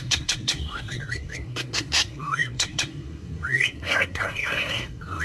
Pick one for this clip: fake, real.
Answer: fake